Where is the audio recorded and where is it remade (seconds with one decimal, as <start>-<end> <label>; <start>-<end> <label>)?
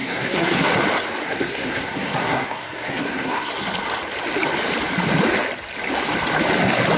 0.0-0.7 remade; 0.7-1.2 recorded; 1.2-3.5 remade; 3.5-7.0 recorded